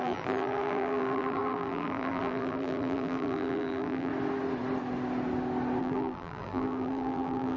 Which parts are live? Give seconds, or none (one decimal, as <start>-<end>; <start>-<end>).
4.1-5.8